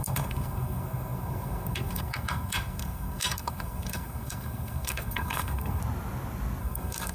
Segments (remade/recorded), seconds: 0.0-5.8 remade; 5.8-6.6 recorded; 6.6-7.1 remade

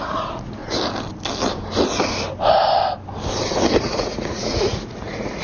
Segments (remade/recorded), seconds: 0.0-0.6 remade; 0.6-3.8 recorded; 3.8-5.4 remade

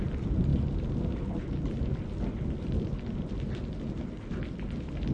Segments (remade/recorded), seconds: 0.0-5.1 recorded

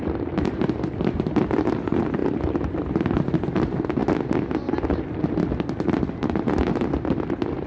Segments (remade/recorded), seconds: 0.0-7.7 recorded

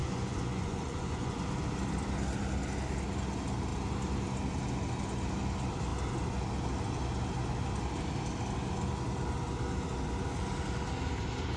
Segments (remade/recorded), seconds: 0.0-1.4 remade; 1.4-11.6 recorded